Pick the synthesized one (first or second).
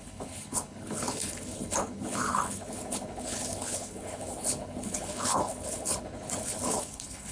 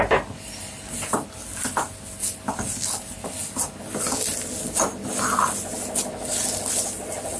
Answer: first